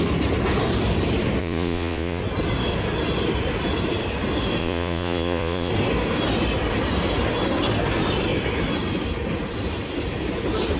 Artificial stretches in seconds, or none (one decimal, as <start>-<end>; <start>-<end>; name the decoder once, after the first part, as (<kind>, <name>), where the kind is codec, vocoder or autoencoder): 1.4-2.2 (vocoder, Vocos); 4.6-5.7